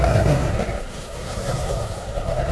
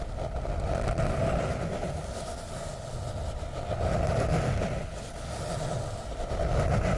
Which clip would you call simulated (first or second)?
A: first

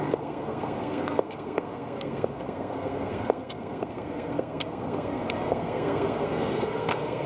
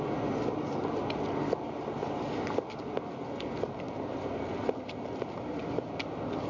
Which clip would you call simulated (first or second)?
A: first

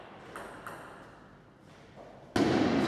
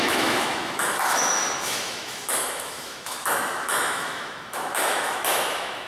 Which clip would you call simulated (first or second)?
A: second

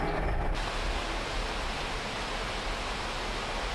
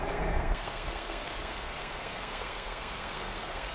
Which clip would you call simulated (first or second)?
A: second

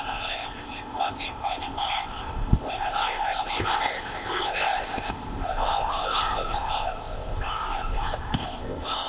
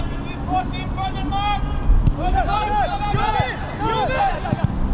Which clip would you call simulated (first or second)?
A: first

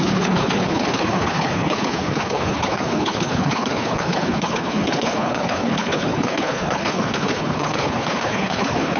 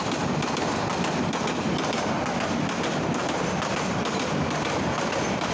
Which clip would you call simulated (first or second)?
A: first